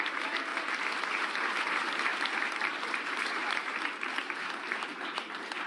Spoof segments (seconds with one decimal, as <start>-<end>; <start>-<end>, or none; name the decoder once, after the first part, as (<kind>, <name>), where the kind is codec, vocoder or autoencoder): 0.0-0.5 (vocoder, BigVGAN v2); 1.0-5.7